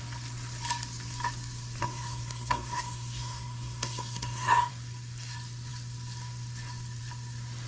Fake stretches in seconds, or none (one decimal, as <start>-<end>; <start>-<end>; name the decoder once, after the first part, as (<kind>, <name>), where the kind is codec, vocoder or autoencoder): 1.8-4.7 (codec, SNAC)